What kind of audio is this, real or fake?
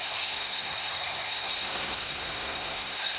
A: fake